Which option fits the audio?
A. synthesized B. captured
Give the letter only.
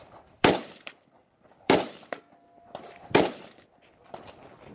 A